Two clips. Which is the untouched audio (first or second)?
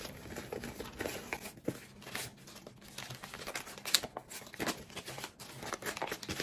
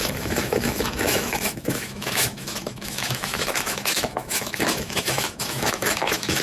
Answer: first